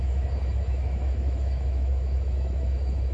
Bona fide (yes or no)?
no